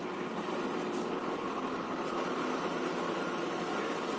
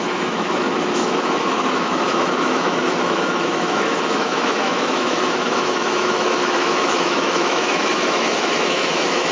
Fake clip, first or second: second